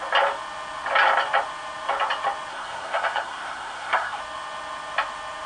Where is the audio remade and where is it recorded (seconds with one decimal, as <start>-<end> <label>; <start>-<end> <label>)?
0.0-2.5 recorded; 2.5-4.2 remade; 4.2-5.5 recorded